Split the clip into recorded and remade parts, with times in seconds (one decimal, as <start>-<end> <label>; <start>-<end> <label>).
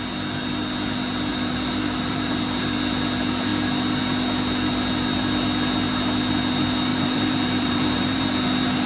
0.0-1.3 recorded; 1.3-2.3 remade; 2.3-6.9 recorded; 6.9-8.3 remade; 8.3-8.9 recorded